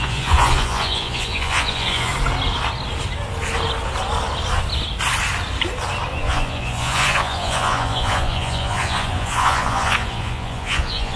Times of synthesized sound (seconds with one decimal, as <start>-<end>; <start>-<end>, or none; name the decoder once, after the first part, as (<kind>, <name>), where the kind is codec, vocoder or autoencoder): 0.0-2.1 (vocoder, Vocos); 6.1-11.2